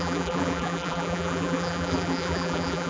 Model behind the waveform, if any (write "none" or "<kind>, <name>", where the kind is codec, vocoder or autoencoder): vocoder, BigVGAN v2